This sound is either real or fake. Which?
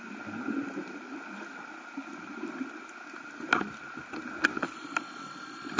real